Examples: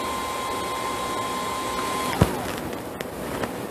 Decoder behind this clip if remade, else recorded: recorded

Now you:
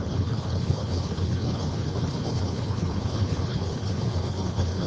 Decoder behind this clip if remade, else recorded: remade, codec, HILCodec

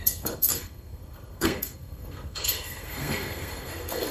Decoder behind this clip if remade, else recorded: remade, codec, SNAC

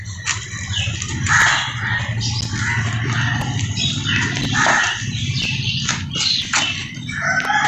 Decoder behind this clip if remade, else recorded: recorded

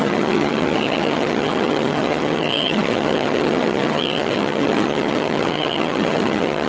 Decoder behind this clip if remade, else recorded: remade, vocoder, HiFi-GAN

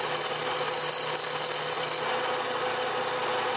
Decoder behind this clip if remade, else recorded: recorded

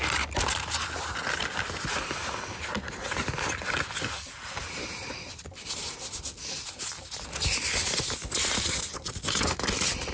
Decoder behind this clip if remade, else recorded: recorded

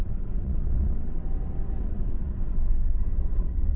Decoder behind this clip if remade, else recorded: remade, vocoder, WaveNeXt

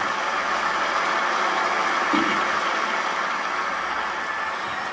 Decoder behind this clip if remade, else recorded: recorded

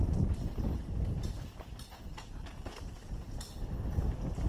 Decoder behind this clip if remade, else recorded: recorded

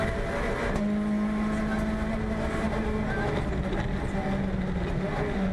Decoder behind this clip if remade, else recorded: recorded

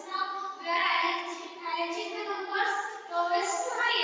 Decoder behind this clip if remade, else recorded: remade, vocoder, Vocos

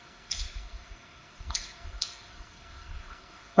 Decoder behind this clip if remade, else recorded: remade, codec, SNAC